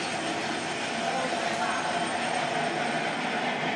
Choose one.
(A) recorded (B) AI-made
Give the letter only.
A